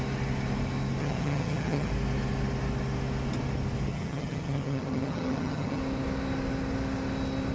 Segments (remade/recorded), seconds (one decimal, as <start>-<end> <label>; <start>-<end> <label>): 0.0-1.0 recorded; 1.0-1.9 remade; 1.9-3.9 recorded; 3.9-5.8 remade; 5.8-7.5 recorded